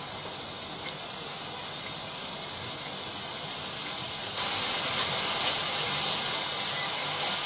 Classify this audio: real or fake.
real